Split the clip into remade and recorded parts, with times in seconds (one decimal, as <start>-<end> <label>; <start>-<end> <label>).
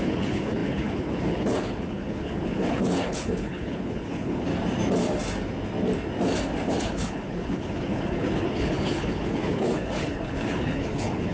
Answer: 0.0-4.5 remade; 4.5-6.7 recorded; 6.7-11.3 remade